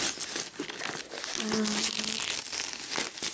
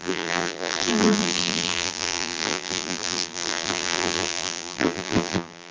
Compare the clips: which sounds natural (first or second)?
first